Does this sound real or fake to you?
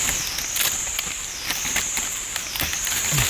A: real